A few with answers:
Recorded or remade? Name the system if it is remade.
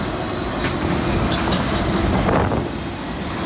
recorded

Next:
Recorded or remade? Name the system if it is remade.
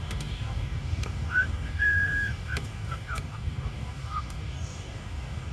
remade, codec, DAC